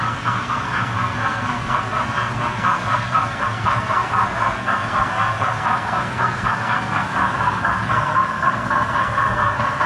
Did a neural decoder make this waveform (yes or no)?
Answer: yes